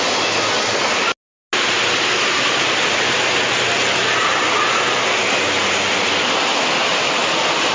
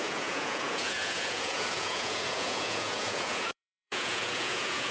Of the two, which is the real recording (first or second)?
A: first